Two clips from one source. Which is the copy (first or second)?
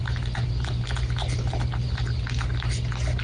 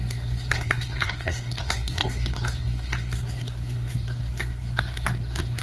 second